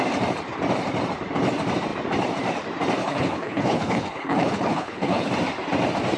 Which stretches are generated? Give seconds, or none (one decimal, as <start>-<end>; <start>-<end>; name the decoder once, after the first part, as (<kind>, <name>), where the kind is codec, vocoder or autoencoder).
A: 3.0-5.3 (codec, HILCodec)